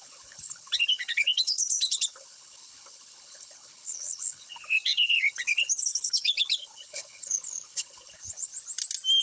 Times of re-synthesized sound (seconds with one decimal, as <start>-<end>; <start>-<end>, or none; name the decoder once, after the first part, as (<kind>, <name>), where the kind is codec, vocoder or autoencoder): 0.0-8.5 (codec, HILCodec)